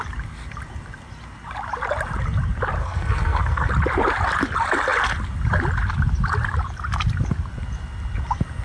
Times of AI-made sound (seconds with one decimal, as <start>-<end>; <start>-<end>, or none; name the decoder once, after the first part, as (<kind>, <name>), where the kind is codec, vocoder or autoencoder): 2.8-3.7 (codec, SNAC)